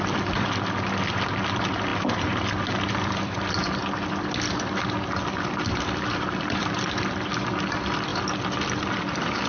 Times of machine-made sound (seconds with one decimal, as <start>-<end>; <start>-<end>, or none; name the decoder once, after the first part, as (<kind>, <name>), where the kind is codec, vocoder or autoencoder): 0.0-1.9 (vocoder, BigVGAN v2); 2.9-3.8; 5.6-9.5